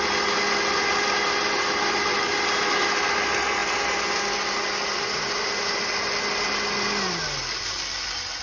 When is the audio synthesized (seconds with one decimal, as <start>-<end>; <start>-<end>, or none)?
none